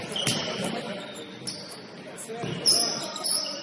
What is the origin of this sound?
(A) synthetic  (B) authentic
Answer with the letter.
B